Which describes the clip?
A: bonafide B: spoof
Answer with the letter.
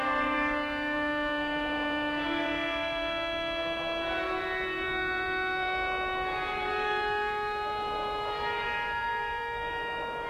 B